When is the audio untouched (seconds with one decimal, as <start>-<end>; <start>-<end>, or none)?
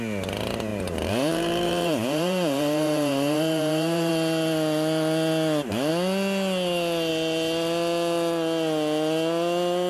0.0-0.7; 4.1-9.9